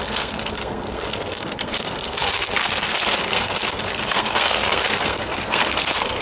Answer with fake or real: fake